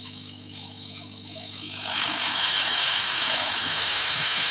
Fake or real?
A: fake